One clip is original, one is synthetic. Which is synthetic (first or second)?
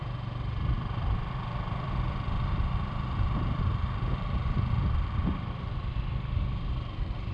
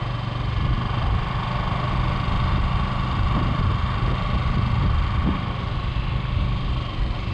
first